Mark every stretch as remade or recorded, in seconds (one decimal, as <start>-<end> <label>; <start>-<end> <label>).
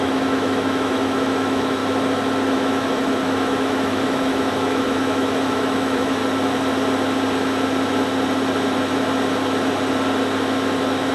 0.0-1.8 remade; 1.8-2.5 recorded; 2.5-6.2 remade; 6.2-11.1 recorded